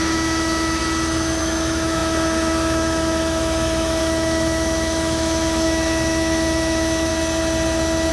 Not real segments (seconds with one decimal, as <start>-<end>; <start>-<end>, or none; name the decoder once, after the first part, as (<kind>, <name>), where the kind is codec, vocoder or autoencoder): 0.0-0.8 (autoencoder, DAC-VAE); 1.4-7.1